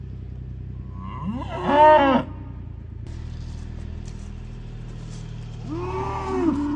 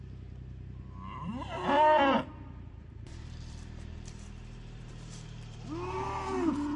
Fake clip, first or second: second